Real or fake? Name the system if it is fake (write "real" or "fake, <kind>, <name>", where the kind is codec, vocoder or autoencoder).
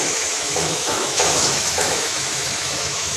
fake, autoencoder, DAC-VAE